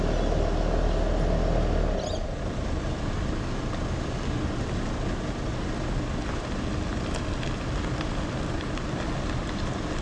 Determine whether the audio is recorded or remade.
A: recorded